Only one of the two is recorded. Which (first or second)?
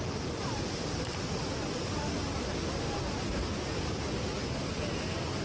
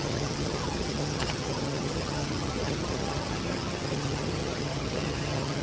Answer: first